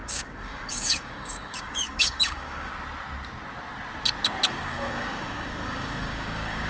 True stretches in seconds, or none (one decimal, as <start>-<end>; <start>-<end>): 2.7-4.5